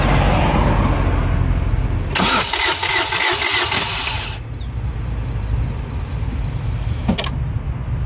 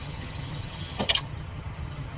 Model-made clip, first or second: second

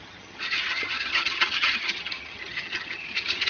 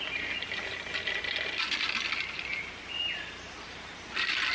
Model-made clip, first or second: first